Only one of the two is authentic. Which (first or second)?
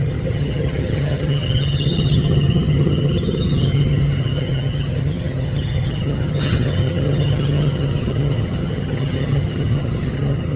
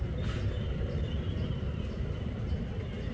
second